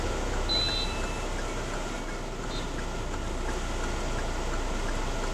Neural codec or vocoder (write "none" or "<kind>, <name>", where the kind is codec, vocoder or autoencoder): none